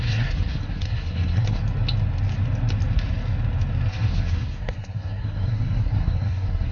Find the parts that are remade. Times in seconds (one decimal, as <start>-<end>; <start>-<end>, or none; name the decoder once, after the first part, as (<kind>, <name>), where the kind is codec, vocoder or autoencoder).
0.0-1.6 (codec, SNAC); 3.9-6.7